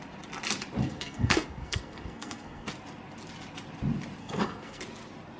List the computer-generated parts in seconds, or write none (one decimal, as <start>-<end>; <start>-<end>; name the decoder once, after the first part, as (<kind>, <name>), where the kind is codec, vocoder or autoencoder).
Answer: 0.8-2.7 (codec, SNAC); 4.2-4.8